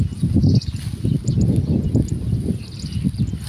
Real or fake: real